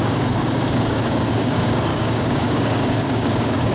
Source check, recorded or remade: remade